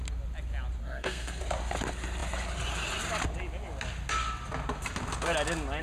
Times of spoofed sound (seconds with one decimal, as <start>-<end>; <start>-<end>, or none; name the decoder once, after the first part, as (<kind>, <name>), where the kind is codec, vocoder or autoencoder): 0.8-1.4 (codec, SNAC)